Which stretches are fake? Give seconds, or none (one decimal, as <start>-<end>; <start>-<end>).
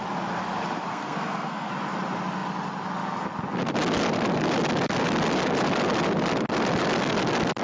0.9-1.7